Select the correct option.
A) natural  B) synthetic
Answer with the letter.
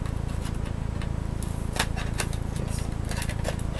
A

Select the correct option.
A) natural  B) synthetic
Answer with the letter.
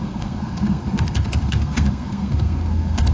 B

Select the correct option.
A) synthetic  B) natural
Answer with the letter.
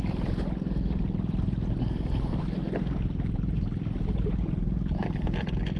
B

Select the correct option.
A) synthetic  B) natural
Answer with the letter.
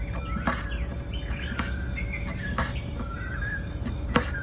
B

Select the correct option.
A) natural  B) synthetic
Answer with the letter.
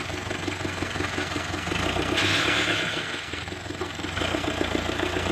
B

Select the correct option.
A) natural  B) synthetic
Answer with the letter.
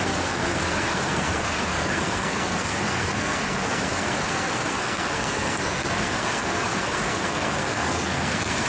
B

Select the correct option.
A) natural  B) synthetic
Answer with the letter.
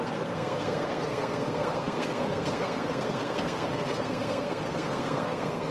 B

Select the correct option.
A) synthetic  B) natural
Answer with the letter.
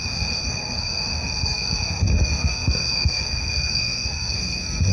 A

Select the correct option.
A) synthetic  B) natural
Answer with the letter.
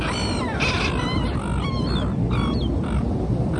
B